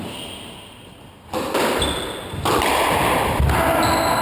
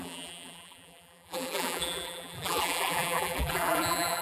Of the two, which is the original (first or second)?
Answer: first